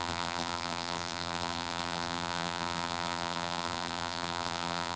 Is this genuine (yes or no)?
no